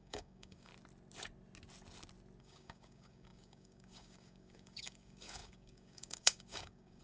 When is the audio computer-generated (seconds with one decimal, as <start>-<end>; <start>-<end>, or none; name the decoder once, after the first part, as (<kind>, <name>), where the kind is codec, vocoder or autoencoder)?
0.0-0.7 (codec, DAC); 2.4-7.0